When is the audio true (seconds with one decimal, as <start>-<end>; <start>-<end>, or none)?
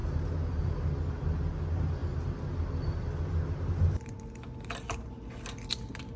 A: 0.0-6.2